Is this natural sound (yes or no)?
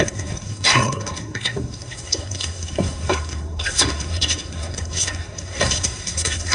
no